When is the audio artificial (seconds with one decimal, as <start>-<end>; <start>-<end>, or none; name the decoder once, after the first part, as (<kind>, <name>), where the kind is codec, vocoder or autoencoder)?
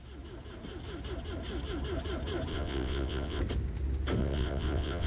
2.5-3.4 (vocoder, WaveNeXt); 4.2-5.1